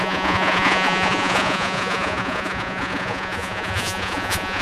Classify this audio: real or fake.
fake